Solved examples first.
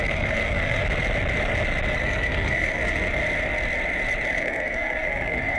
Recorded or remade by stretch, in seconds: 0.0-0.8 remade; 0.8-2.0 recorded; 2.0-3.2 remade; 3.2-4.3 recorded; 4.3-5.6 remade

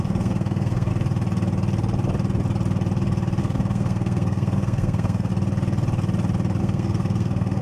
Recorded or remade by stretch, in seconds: 0.0-0.9 remade; 0.9-3.4 recorded; 3.4-5.3 remade; 5.3-6.6 recorded; 6.6-7.6 remade

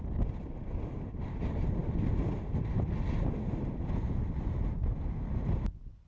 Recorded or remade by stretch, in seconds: 0.0-6.1 recorded

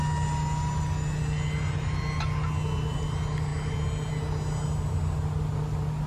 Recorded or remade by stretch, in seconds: 0.0-6.1 recorded

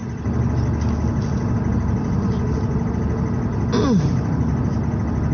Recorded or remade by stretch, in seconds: 0.0-5.3 recorded

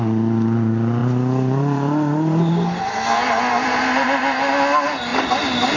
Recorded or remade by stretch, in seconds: 0.0-1.0 recorded; 1.0-4.5 remade; 4.5-5.8 recorded

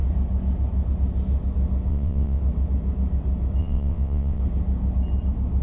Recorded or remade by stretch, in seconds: 0.0-1.9 recorded; 1.9-2.4 remade; 2.4-3.6 recorded; 3.6-4.4 remade; 4.4-5.6 recorded

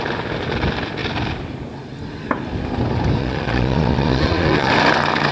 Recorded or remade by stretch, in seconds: 0.0-3.2 recorded; 3.2-4.7 remade; 4.7-5.3 recorded